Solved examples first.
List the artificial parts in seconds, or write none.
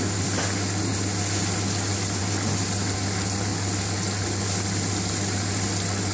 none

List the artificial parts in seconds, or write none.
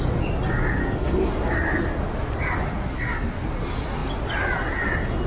0.8-1.3 (codec, SNAC)